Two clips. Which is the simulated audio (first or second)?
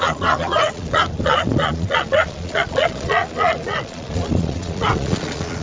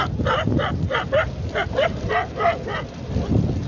first